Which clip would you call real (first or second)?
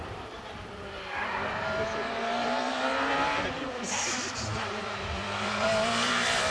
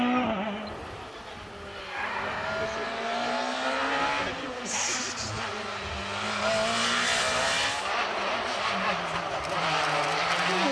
second